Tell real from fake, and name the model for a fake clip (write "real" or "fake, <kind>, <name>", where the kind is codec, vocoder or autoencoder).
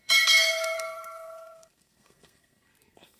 fake, codec, SNAC